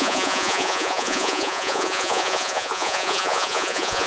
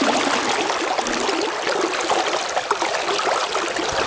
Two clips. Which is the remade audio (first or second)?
first